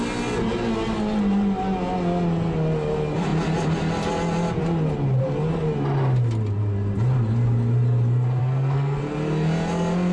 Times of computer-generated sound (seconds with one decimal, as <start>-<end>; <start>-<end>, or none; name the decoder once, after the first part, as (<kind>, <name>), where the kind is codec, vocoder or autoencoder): 8.4-9.0 (codec, SNAC)